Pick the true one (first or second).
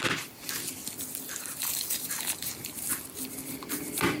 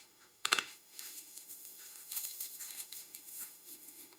first